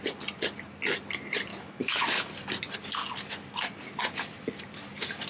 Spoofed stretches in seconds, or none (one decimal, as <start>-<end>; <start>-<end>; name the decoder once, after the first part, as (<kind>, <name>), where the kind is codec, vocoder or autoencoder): 1.5-2.3 (autoencoder, DAC-VAE)